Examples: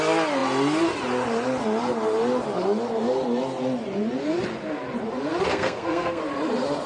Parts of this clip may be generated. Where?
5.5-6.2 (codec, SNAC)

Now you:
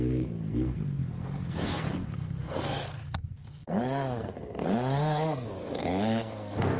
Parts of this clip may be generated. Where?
0.0-6.8 (codec, SNAC)